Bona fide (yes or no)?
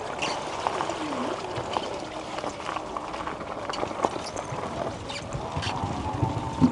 yes